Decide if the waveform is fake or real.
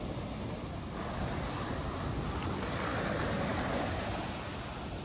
real